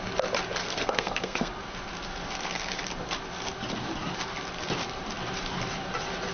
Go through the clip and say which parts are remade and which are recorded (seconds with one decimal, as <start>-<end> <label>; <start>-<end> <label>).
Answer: 0.0-0.6 recorded; 0.6-1.5 remade; 1.5-6.3 recorded